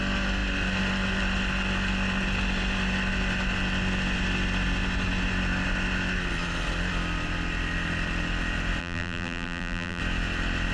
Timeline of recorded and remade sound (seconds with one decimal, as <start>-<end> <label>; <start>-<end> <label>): 0.0-8.8 recorded; 8.8-10.0 remade; 10.0-10.7 recorded